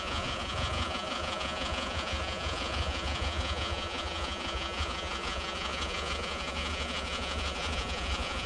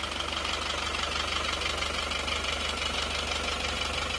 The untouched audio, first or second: second